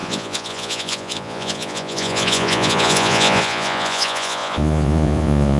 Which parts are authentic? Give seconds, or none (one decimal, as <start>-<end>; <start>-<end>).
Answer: none